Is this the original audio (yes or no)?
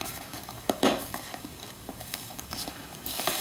no